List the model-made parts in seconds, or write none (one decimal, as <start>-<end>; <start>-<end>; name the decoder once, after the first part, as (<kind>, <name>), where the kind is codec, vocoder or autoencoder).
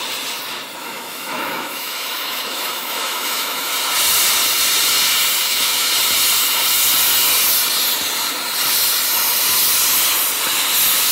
0.8-3.7 (autoencoder, DAC-VAE); 5.4-5.9